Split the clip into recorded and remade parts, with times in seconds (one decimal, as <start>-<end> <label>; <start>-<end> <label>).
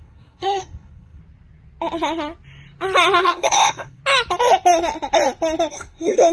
0.0-1.2 remade; 1.2-3.2 recorded; 3.2-4.0 remade; 4.0-5.7 recorded; 5.7-6.3 remade